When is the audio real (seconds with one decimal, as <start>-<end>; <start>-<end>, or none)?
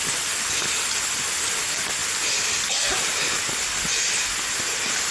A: 0.0-5.1